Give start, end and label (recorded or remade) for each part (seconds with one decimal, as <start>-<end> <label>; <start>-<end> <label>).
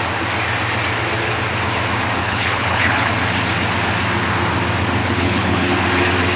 0.0-2.2 recorded; 2.2-3.1 remade; 3.1-5.0 recorded; 5.0-5.7 remade; 5.7-6.4 recorded